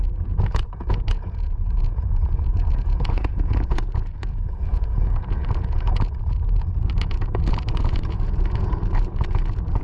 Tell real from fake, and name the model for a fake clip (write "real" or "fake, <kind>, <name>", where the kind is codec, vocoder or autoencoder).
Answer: fake, vocoder, Vocos